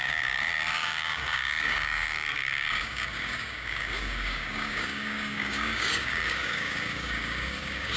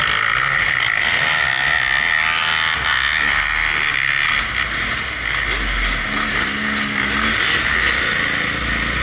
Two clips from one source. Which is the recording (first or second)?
second